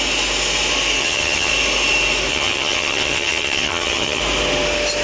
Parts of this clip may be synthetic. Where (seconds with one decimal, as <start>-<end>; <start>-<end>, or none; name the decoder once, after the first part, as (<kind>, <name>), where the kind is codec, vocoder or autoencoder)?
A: 1.0-1.5 (vocoder, HiFi-GAN); 2.3-4.2